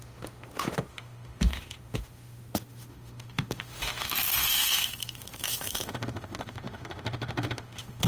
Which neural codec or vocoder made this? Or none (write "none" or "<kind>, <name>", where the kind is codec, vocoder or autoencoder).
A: autoencoder, DAC-VAE